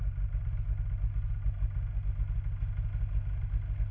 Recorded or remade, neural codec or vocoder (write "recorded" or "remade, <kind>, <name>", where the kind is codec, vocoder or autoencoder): recorded